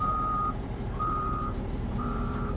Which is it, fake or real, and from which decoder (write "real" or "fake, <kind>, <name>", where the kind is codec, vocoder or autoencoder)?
fake, vocoder, BigVGAN v2